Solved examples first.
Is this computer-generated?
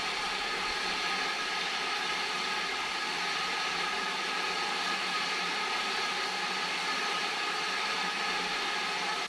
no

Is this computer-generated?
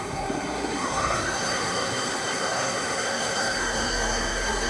yes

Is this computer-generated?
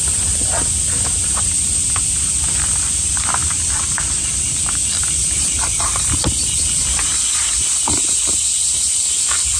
yes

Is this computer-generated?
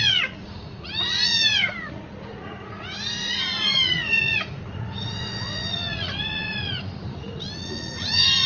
yes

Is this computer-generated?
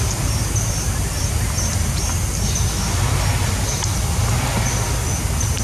no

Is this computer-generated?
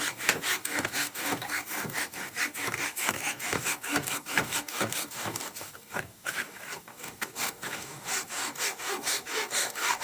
yes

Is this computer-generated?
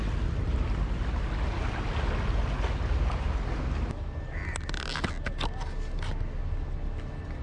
no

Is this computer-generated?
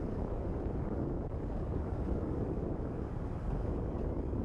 yes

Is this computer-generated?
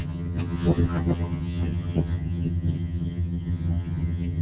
yes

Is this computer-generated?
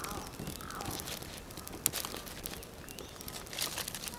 no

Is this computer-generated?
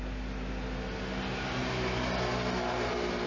no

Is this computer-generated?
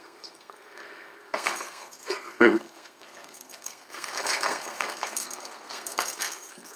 yes